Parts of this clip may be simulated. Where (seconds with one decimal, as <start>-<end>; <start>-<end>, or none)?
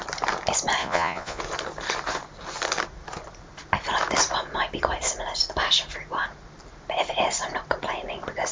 0.8-1.4